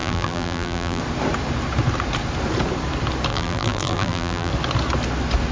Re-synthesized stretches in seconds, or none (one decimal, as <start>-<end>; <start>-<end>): 0.0-1.0; 3.3-4.5